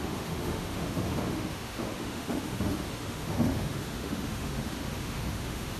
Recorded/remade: remade